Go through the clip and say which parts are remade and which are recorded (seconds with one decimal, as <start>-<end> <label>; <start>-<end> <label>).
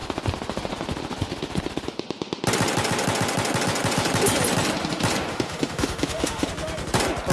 0.0-5.3 recorded; 5.3-6.5 remade; 6.5-7.3 recorded